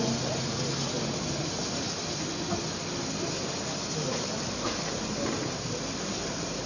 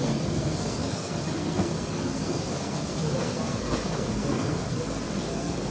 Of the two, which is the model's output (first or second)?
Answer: second